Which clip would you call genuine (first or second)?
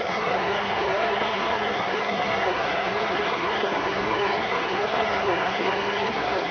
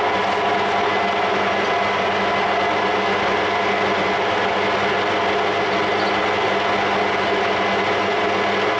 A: second